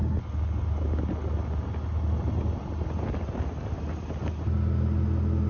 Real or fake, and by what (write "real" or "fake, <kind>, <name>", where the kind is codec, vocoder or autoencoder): real